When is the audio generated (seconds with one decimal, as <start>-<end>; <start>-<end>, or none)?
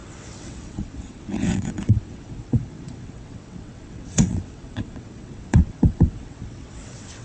0.0-7.2